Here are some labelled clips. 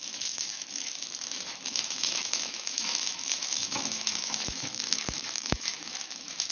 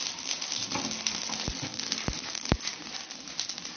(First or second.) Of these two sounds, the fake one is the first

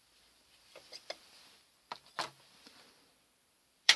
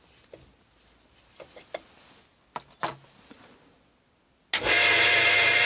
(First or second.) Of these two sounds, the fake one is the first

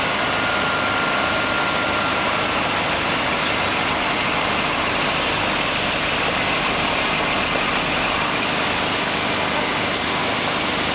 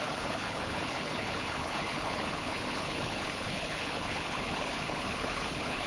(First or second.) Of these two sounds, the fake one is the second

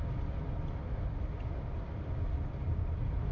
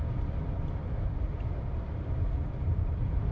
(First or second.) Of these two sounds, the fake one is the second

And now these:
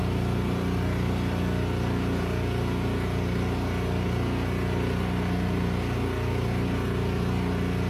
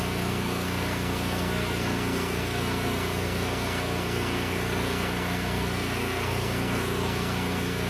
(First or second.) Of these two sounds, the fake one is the second